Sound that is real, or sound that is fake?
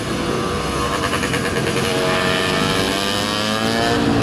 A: real